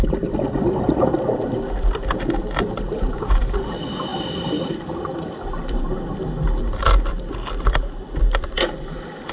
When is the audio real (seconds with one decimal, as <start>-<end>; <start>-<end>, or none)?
0.0-9.3